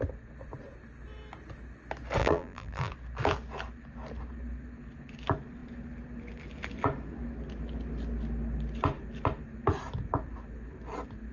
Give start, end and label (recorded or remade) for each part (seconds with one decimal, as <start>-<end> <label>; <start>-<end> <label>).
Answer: 0.0-2.2 recorded; 2.2-2.9 remade; 2.9-11.3 recorded